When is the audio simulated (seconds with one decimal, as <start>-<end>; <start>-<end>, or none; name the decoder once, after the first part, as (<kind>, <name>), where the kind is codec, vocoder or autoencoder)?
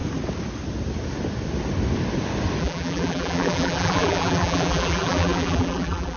2.6-6.2 (vocoder, BigVGAN v2)